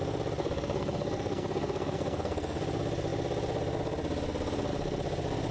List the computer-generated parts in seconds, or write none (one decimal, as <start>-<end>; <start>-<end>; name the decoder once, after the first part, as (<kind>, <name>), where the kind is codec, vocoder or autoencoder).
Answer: 0.4-2.6 (codec, SNAC)